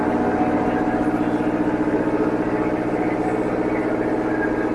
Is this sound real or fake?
real